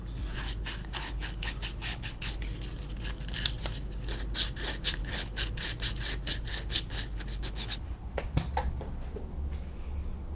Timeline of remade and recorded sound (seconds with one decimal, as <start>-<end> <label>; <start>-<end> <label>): 0.0-0.8 recorded; 0.8-1.5 remade; 1.5-1.9 recorded; 1.9-2.4 remade; 2.4-5.0 recorded; 5.0-5.5 remade; 5.5-6.5 recorded; 6.5-8.1 remade; 8.1-10.3 recorded